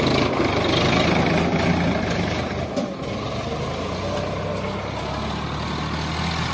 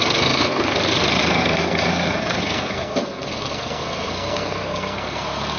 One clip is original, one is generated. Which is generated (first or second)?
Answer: second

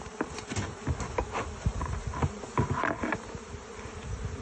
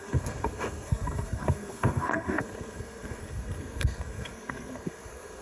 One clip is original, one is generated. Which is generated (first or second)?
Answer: second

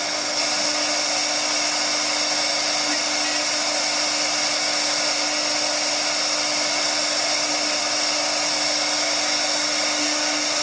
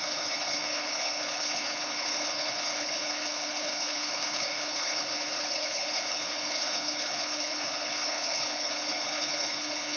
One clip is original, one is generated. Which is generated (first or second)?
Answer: second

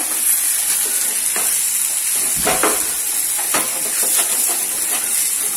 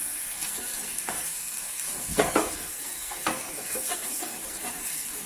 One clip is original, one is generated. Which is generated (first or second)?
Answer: second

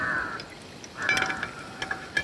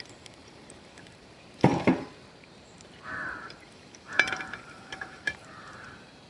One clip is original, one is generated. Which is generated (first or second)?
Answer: second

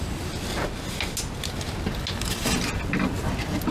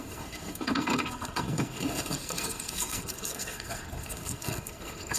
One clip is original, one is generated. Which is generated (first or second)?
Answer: second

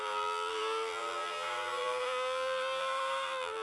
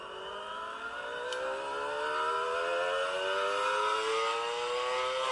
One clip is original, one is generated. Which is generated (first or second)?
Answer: first